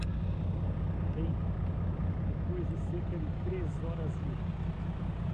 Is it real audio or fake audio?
real